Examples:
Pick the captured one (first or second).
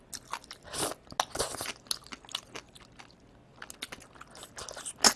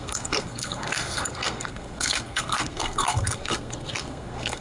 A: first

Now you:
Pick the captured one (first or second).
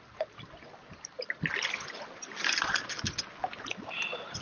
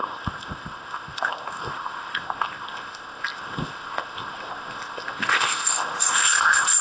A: first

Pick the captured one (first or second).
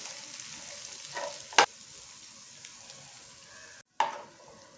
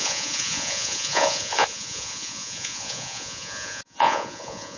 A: first